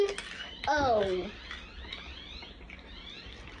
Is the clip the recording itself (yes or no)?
yes